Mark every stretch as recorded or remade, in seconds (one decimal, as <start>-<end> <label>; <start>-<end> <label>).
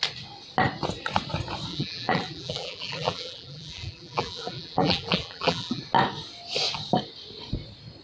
0.0-1.7 recorded; 1.7-5.8 remade; 5.8-8.0 recorded